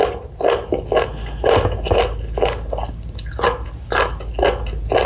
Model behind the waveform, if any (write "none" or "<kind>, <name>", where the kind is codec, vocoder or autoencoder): none